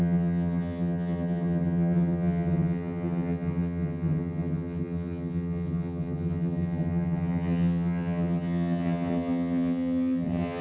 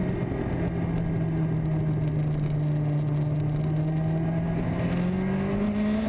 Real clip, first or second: second